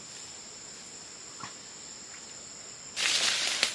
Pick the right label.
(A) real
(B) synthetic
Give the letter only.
A